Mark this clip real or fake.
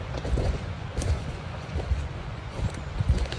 fake